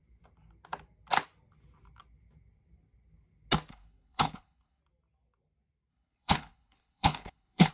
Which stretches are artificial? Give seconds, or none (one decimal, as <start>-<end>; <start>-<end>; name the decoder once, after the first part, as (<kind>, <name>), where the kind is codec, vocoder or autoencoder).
3.7-4.8 (codec, HILCodec); 5.9-7.7